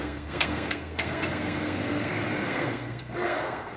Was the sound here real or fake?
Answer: fake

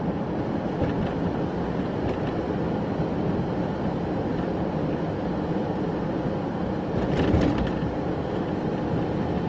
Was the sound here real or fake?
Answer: real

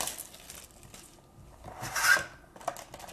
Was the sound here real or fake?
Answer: real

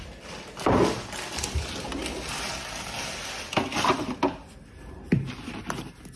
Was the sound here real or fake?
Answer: real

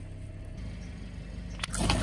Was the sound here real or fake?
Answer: real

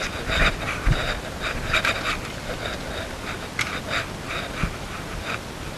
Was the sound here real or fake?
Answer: real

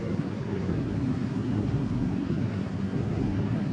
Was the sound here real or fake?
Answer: fake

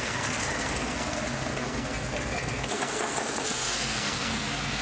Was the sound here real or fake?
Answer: fake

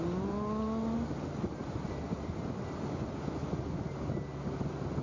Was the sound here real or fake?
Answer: real